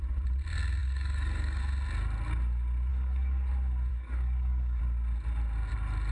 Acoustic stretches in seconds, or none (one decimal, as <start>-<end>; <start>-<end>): 0.0-0.8; 1.6-2.9; 3.5-3.9; 4.8-6.1